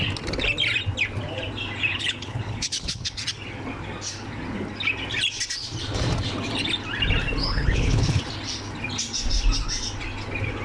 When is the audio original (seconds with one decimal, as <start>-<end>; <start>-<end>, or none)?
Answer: 0.0-1.9; 3.2-7.4; 8.2-10.6